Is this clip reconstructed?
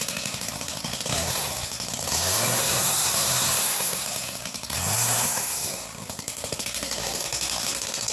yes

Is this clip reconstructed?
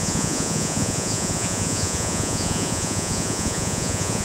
yes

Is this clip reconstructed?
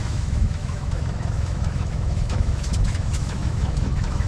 yes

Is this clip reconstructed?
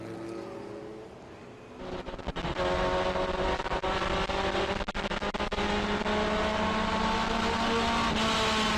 no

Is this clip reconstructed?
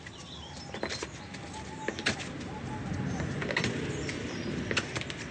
no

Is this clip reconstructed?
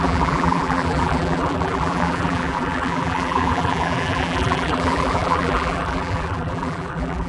yes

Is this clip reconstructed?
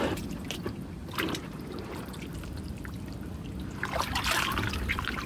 yes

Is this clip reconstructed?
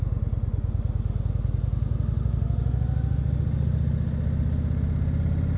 no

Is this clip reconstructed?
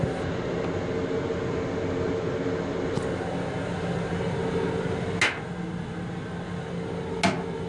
no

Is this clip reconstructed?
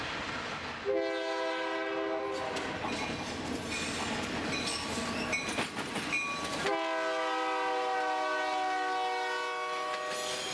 no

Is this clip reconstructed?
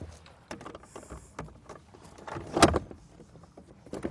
no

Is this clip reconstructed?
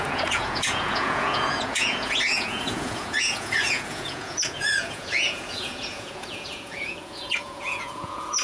yes